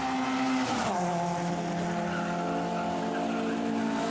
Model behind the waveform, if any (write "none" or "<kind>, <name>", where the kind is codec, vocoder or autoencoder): none